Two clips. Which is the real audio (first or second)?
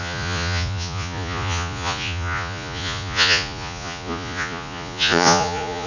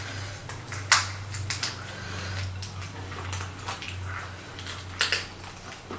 second